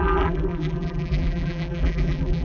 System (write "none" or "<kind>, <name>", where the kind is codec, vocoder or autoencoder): vocoder, BigVGAN v2